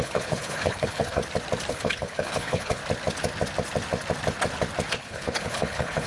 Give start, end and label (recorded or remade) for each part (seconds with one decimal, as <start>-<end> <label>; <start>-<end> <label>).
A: 0.0-1.2 remade; 1.2-1.7 recorded; 1.7-2.8 remade; 2.8-4.9 recorded; 4.9-6.1 remade